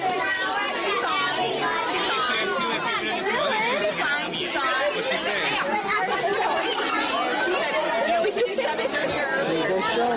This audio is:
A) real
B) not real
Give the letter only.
A